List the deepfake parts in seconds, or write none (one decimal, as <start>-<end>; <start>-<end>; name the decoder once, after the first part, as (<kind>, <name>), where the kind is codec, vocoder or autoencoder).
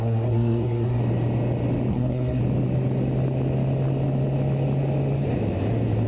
0.0-1.0 (codec, SNAC); 1.9-2.4